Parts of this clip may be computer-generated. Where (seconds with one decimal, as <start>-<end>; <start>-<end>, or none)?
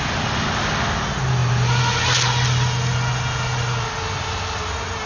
none